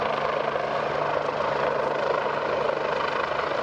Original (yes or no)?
yes